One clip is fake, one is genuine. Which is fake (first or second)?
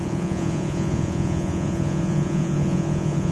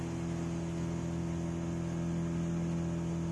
first